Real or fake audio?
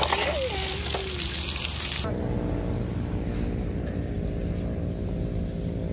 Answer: real